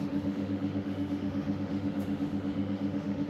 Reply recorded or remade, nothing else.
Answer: remade